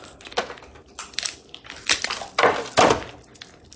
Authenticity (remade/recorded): recorded